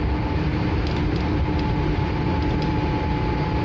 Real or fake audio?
real